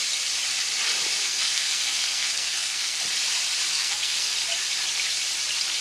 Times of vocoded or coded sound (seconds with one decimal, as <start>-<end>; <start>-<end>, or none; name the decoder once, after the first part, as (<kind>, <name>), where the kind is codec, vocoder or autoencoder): 1.2-3.0 (codec, SNAC); 3.7-4.3